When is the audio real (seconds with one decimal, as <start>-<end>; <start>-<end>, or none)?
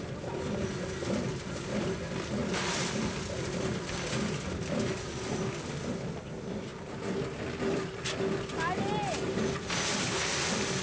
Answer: 0.0-2.4; 3.2-10.8